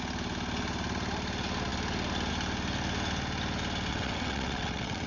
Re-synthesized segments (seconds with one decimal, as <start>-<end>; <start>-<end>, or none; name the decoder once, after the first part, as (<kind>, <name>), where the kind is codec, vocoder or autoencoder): 3.9-5.1 (vocoder, WaveNeXt)